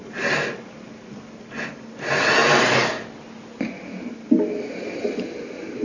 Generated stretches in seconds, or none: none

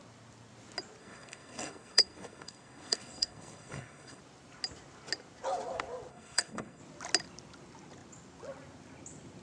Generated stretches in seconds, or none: 1.0-4.2 (codec, SNAC); 6.1-6.8

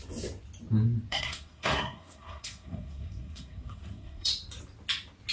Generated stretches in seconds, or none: 1.1-4.3 (codec, SNAC)

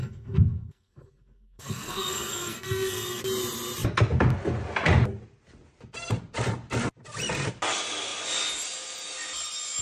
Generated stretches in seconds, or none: 0.0-3.2 (codec, SNAC)